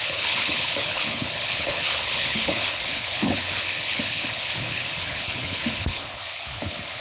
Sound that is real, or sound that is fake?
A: fake